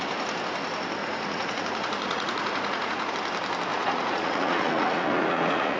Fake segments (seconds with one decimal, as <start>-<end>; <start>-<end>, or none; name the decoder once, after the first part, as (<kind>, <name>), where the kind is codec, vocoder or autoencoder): 1.0-3.1 (vocoder, Vocos); 3.7-5.8